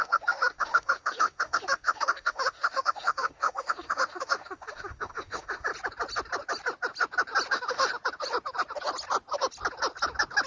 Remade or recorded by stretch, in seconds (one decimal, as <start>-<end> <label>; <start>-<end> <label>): 0.0-5.7 remade; 5.7-7.5 recorded; 7.5-7.9 remade; 7.9-10.5 recorded